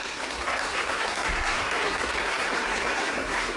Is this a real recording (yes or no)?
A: no